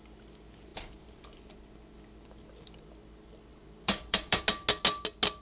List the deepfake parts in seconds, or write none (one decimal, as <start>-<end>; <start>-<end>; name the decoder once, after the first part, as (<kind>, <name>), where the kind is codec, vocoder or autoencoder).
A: 0.7-1.5 (vocoder, BigVGAN v2); 3.5-4.4